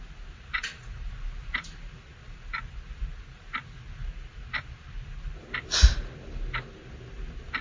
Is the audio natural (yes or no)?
yes